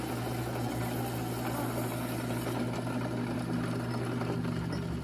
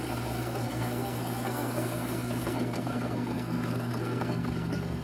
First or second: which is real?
first